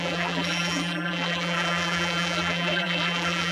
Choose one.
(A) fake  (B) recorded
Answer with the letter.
A